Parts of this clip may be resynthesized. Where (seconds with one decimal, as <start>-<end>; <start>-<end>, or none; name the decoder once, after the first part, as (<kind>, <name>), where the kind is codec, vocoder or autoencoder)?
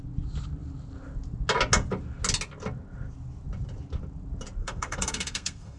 4.6-5.8 (codec, SNAC)